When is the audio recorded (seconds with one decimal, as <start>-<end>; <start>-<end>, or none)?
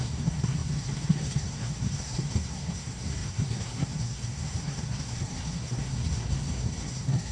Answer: none